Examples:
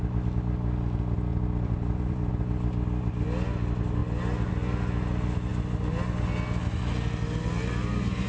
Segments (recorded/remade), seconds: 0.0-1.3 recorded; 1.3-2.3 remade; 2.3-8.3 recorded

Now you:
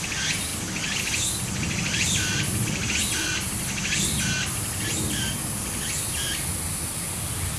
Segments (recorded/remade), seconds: 0.0-7.6 recorded

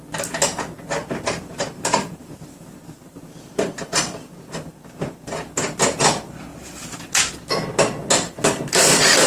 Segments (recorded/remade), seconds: 0.0-1.0 recorded; 1.0-5.4 remade; 5.4-6.5 recorded; 6.5-7.3 remade; 7.3-9.3 recorded

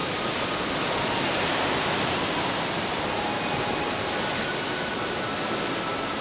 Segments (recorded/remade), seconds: 0.0-6.2 recorded

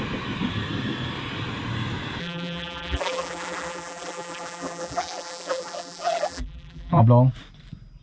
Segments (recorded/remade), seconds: 0.0-2.2 recorded; 2.2-7.0 remade; 7.0-8.0 recorded

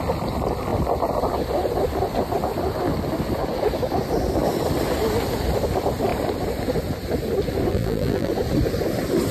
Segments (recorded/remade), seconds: 0.0-7.7 recorded; 7.7-8.3 remade; 8.3-9.3 recorded